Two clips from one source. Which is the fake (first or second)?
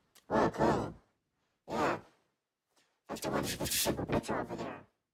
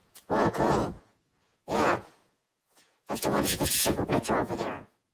second